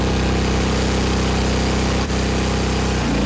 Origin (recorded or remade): recorded